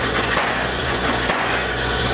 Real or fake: fake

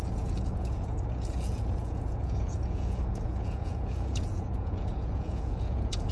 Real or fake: fake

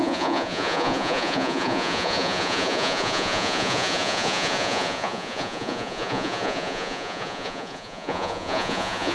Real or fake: fake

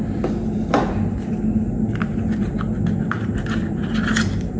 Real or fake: real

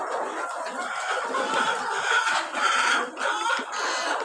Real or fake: real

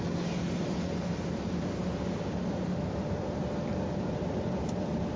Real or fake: real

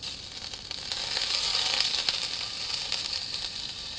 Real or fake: real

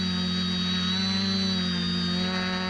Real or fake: real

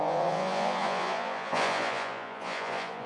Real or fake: fake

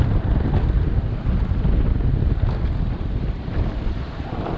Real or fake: real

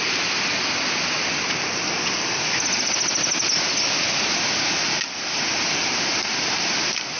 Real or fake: real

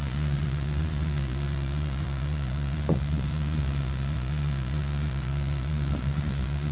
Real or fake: fake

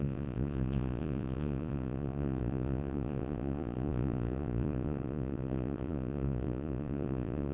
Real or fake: fake